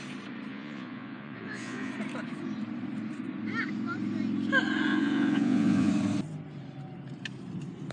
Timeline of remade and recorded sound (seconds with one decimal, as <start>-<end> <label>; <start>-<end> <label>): 0.0-0.5 recorded; 0.5-1.9 remade; 1.9-4.9 recorded; 4.9-5.9 remade; 5.9-7.9 recorded